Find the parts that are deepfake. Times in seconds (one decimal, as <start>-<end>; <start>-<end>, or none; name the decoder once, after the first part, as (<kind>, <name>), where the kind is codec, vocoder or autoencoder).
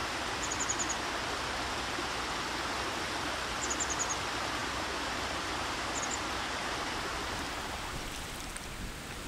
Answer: 4.6-5.9 (vocoder, BigVGAN v2)